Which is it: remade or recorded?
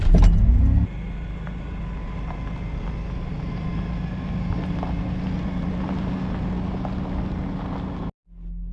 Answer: recorded